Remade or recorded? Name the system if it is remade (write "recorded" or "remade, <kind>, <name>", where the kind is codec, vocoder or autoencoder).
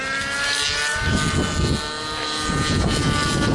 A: recorded